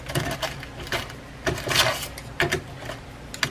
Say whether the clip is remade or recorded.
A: recorded